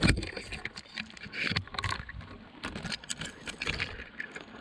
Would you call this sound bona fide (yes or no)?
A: yes